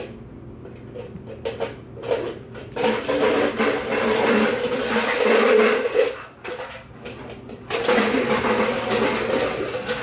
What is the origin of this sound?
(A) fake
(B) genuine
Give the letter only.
B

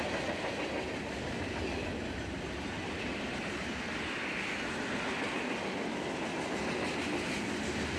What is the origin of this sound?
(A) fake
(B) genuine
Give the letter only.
B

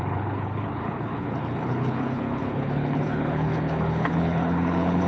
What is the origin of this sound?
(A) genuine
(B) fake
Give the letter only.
B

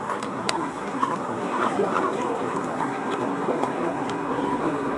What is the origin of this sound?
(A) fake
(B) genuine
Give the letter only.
A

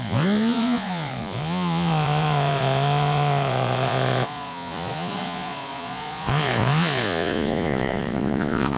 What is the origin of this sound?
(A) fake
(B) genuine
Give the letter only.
A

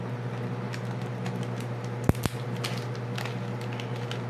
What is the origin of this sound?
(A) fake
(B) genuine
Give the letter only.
B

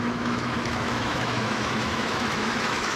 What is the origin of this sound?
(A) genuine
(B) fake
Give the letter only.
B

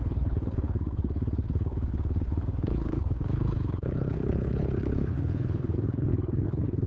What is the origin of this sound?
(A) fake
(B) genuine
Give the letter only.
A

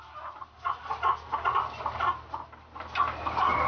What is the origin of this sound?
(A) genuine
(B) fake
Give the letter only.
A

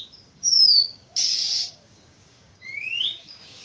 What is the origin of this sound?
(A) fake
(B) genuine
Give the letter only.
A